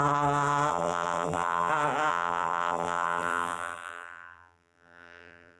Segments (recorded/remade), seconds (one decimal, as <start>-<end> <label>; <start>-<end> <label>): 0.0-0.7 recorded; 0.7-1.7 remade; 1.7-2.1 recorded; 2.1-5.6 remade